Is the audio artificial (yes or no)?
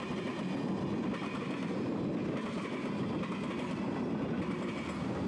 no